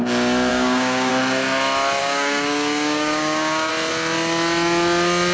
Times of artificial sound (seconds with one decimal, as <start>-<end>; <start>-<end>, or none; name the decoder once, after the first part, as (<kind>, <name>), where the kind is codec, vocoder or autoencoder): 0.5-1.1 (codec, DAC); 2.0-3.7